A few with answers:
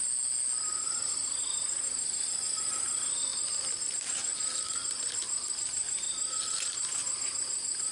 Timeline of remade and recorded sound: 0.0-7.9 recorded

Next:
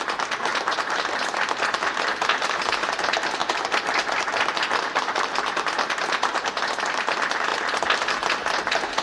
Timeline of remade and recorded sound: 0.0-0.5 recorded; 0.5-3.0 remade; 3.0-9.0 recorded

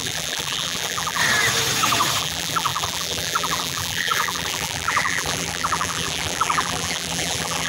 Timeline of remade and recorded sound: 0.0-1.2 remade; 1.2-2.2 recorded; 2.2-7.7 remade

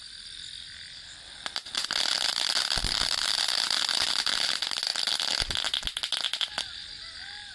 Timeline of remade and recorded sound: 0.0-7.5 recorded

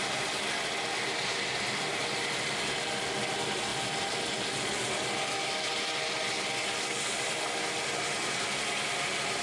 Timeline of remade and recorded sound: 0.0-9.4 recorded

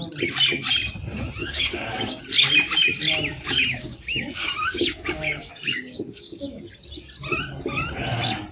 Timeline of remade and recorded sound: 0.0-1.4 recorded; 1.4-2.2 remade; 2.2-3.7 recorded; 3.7-6.6 remade; 6.6-8.5 recorded

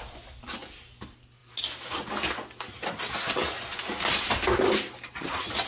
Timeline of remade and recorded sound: 0.0-5.7 recorded